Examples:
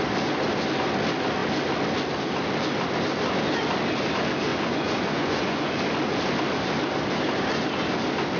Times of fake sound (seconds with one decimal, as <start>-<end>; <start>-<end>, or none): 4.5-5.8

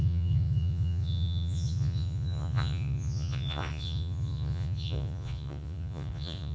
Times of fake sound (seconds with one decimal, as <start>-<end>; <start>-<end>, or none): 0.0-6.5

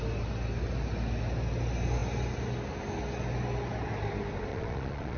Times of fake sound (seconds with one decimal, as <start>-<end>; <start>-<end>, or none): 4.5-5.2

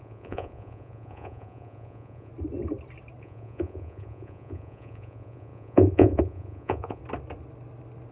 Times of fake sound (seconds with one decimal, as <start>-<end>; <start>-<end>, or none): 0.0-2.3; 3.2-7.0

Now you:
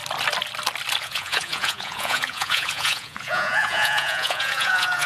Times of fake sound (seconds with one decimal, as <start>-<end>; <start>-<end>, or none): 1.0-5.1

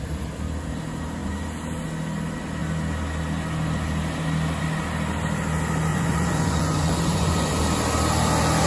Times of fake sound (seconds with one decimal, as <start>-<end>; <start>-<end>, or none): 5.9-7.5